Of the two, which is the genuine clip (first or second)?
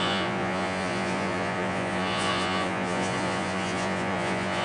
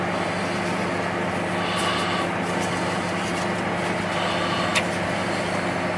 second